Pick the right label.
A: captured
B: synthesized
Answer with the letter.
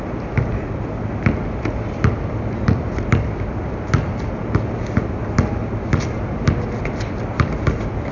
A